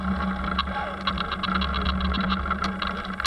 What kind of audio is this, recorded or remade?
recorded